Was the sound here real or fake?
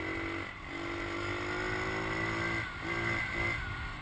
real